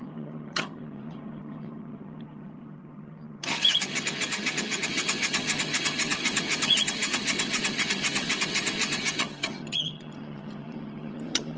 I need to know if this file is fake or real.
fake